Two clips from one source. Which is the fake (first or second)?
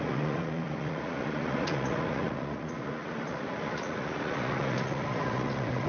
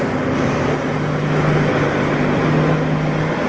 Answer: first